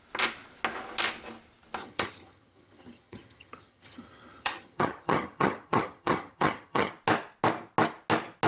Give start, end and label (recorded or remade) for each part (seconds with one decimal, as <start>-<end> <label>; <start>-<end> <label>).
0.0-1.8 recorded; 1.8-6.9 remade; 6.9-8.5 recorded